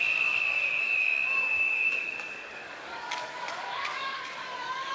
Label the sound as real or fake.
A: fake